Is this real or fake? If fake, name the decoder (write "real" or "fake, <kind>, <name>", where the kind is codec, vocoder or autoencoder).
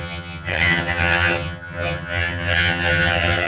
fake, vocoder, HiFi-GAN